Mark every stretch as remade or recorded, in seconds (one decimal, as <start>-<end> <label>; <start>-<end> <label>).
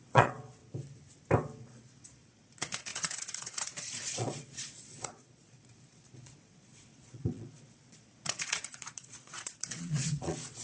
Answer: 0.0-0.6 remade; 0.6-1.6 recorded; 1.6-10.6 remade